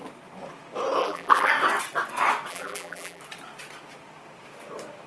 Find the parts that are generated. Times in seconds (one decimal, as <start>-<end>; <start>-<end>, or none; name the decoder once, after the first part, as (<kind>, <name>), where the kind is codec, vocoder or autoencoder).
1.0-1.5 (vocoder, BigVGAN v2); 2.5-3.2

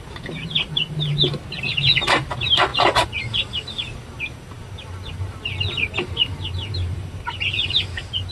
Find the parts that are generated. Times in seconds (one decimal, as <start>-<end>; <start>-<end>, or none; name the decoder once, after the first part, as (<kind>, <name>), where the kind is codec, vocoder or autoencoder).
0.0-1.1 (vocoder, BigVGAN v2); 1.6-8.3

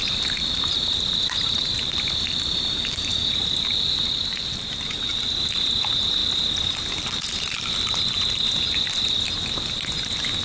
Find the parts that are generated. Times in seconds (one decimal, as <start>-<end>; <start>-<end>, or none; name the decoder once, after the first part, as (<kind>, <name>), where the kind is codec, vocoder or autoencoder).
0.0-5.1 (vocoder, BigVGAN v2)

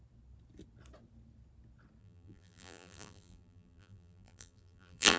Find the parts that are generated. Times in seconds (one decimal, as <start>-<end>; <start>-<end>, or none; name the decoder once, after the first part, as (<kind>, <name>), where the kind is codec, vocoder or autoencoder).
2.0-5.2 (vocoder, BigVGAN v2)

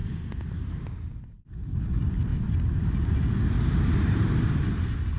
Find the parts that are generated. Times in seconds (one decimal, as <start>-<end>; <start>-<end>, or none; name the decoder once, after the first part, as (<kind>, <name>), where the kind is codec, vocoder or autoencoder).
0.0-1.2 (vocoder, BigVGAN v2)

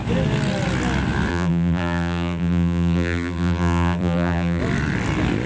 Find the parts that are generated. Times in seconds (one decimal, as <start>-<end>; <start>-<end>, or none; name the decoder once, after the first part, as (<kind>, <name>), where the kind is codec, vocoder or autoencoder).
1.3-4.6 (vocoder, BigVGAN v2)

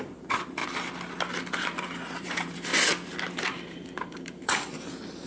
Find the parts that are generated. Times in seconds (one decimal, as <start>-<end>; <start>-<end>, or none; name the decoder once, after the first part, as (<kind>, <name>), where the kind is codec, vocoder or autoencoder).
0.0-0.6 (vocoder, BigVGAN v2); 1.5-2.7; 3.3-5.3